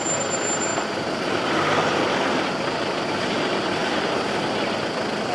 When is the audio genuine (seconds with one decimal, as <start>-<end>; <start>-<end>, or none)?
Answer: 0.0-0.7; 2.7-3.8; 4.3-5.3